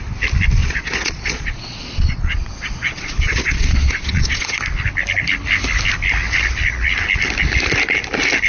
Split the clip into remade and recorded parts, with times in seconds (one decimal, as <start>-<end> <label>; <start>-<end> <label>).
0.0-0.6 recorded; 0.6-4.6 remade; 4.6-8.5 recorded